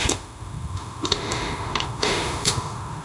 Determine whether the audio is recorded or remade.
remade